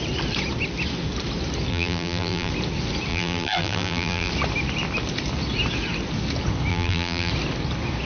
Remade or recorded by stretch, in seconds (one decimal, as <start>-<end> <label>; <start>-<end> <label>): 0.0-1.7 recorded; 1.7-2.5 remade; 2.5-3.1 recorded; 3.1-4.3 remade; 4.3-6.7 recorded; 6.7-7.3 remade; 7.3-8.0 recorded